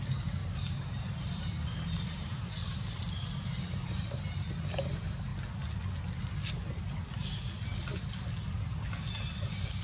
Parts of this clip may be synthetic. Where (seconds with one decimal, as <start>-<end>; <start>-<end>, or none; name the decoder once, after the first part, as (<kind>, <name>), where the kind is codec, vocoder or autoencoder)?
0.4-4.2 (vocoder, BigVGAN v2)